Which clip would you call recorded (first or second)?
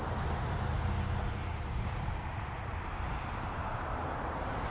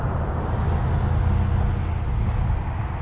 second